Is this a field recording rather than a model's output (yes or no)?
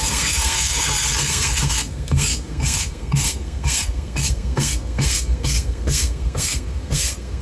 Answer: no